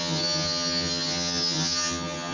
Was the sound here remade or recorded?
remade